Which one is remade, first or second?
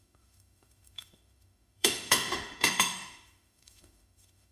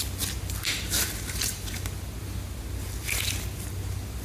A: first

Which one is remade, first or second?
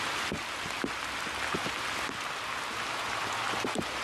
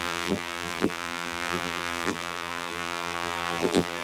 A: second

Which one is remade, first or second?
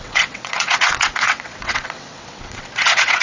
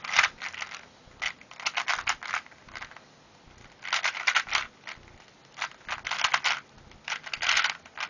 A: first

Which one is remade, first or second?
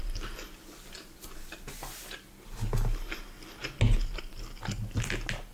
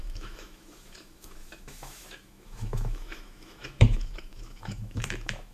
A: second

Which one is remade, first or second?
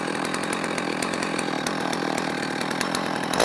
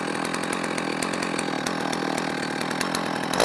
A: first